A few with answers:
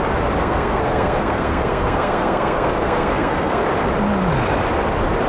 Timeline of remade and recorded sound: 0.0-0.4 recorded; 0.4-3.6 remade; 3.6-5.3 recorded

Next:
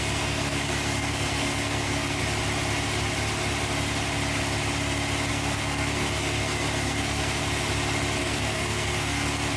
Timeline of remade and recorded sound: 0.0-2.2 remade; 2.2-5.3 recorded; 5.3-7.4 remade; 7.4-8.2 recorded; 8.2-9.6 remade